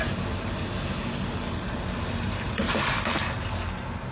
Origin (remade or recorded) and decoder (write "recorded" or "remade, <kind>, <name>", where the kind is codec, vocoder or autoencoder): recorded